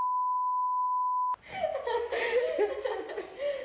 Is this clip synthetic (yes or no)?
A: no